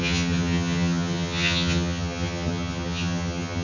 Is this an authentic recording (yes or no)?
no